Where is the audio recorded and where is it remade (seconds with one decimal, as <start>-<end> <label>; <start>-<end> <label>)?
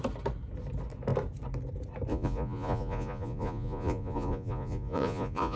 0.0-2.1 recorded; 2.1-5.6 remade